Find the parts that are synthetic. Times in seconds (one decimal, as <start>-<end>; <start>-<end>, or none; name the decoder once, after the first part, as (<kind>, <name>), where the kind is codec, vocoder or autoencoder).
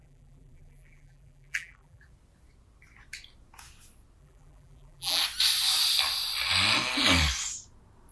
0.0-2.1 (vocoder, BigVGAN v2); 4.2-5.2